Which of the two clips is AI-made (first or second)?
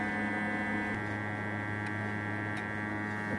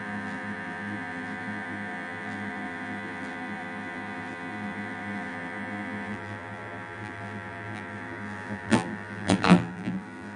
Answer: second